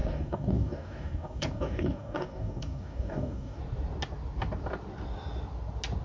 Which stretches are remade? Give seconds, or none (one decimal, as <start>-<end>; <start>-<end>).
0.0-3.6